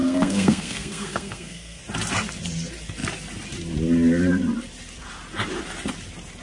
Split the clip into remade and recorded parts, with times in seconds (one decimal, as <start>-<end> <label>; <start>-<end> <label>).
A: 0.0-1.8 remade; 1.8-6.4 recorded